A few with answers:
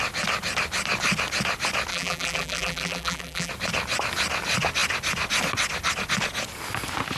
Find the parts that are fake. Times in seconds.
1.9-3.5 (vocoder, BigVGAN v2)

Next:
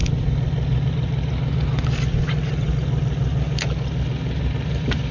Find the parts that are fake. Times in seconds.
none

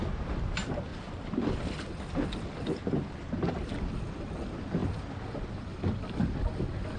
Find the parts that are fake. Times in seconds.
0.9-3.7 (vocoder, BigVGAN v2)